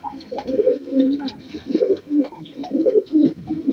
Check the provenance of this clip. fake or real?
fake